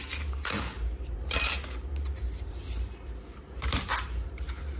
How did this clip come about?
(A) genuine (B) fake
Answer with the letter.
B